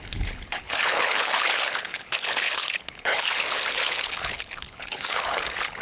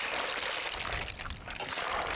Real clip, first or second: second